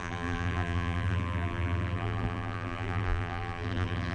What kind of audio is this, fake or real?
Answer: fake